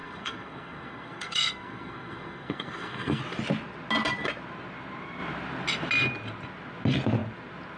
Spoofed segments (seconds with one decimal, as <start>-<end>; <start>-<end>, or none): 0.0-3.2